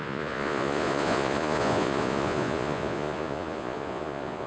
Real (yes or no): no